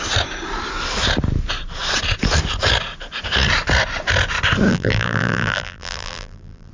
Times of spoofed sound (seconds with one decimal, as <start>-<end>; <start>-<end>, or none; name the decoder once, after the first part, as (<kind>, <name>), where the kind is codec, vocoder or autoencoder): 4.7-6.7 (vocoder, BigVGAN v2)